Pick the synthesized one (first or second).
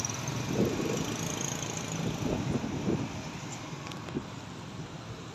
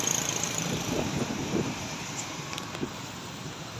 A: second